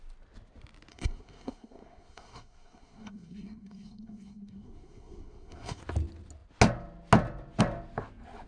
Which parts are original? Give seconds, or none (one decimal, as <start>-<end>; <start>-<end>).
0.0-0.9; 5.8-8.5